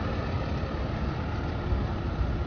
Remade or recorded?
recorded